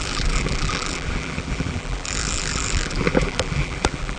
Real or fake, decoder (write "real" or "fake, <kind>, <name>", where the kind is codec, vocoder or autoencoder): fake, vocoder, BigVGAN v2